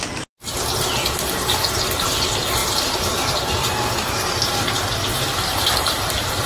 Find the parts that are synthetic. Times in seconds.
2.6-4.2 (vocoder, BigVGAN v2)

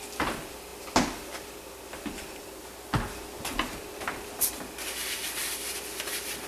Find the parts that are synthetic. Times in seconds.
none

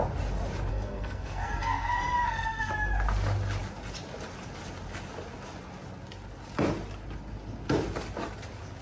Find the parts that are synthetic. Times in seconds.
0.7-2.7 (codec, SNAC)

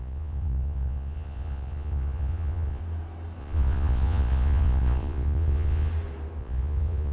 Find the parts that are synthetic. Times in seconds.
0.0-2.8 (vocoder, Vocos); 3.4-5.9; 6.4-7.1